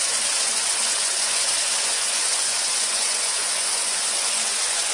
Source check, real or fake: fake